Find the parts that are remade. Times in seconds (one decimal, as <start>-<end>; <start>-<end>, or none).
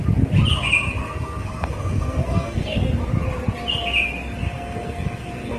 1.0-2.9; 4.4-5.6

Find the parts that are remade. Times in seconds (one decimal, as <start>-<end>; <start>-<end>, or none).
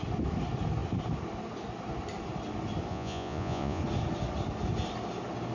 2.9-3.8